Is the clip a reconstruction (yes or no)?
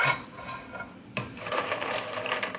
yes